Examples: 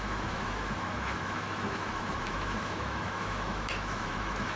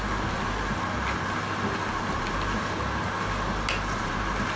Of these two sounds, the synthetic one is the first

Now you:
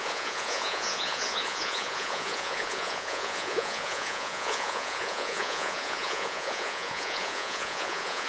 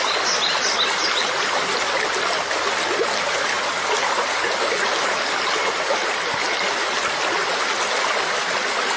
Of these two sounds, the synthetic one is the first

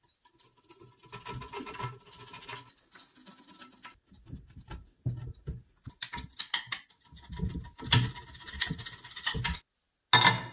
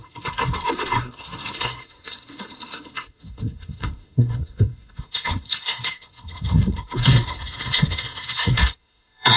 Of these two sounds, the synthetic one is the second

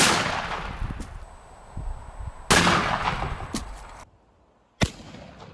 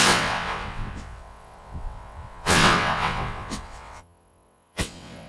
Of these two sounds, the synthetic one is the second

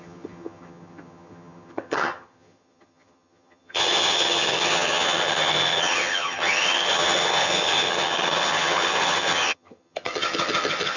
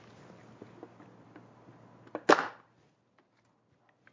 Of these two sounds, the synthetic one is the first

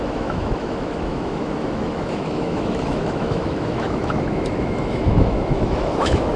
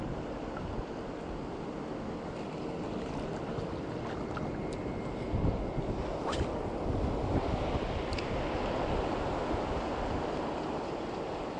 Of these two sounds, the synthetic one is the first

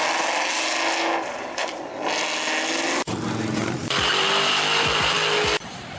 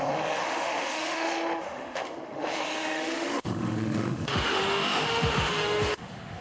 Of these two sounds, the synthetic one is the second